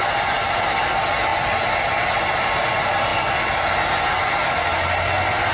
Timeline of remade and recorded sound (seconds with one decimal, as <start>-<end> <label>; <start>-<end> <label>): 0.0-5.5 recorded